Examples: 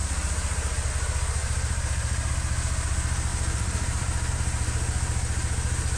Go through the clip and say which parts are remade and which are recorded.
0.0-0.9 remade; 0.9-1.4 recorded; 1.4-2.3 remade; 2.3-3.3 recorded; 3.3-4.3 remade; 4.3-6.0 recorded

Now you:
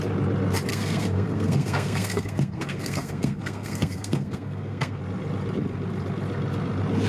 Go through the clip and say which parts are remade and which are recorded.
0.0-0.7 recorded; 0.7-5.0 remade; 5.0-7.1 recorded

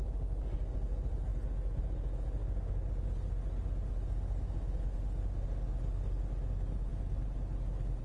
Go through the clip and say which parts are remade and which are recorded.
0.0-8.0 recorded